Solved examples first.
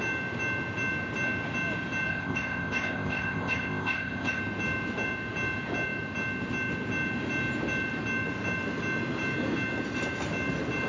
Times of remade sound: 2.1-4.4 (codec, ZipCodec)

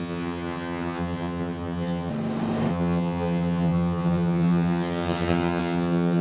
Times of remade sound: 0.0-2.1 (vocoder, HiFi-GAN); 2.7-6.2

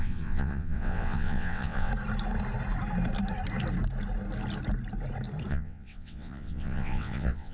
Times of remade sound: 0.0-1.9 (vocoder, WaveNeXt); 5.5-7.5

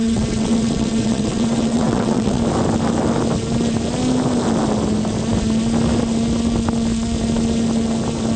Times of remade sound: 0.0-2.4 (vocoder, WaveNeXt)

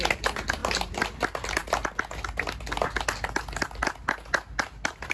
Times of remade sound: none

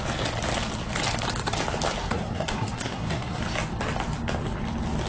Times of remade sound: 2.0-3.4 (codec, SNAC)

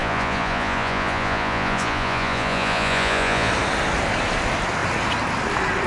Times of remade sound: 0.0-3.5 (vocoder, Vocos)